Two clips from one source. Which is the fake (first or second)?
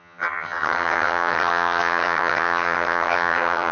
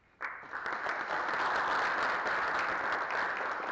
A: first